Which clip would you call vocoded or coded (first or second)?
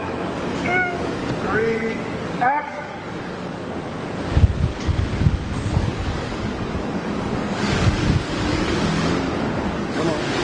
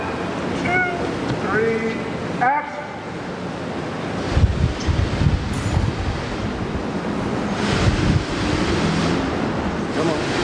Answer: first